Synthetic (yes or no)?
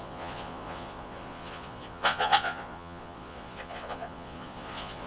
yes